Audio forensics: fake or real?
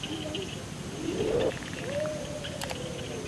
real